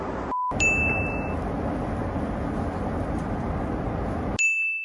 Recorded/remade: recorded